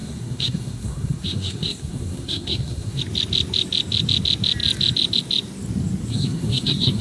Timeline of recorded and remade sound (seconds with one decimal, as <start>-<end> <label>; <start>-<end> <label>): 0.0-3.0 remade; 3.0-6.1 recorded; 6.1-7.0 remade